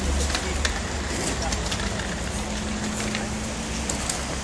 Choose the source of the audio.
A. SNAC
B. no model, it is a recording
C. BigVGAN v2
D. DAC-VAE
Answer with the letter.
B